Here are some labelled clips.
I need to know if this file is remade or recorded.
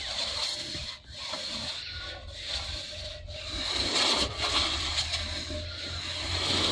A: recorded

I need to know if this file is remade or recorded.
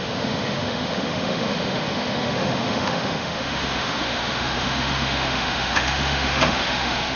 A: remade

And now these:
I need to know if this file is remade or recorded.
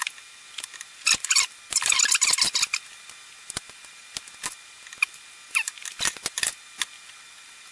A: recorded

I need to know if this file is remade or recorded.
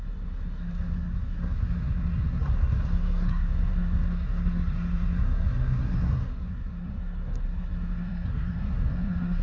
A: remade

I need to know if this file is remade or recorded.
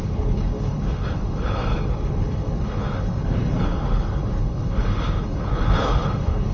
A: remade